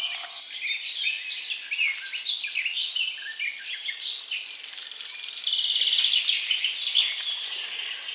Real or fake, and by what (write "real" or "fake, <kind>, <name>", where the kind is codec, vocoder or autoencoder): real